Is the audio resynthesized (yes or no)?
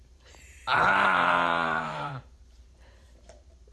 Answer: yes